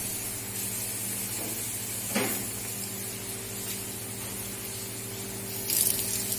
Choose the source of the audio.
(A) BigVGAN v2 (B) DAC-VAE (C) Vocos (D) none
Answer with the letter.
D